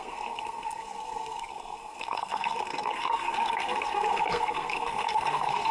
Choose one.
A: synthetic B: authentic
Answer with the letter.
A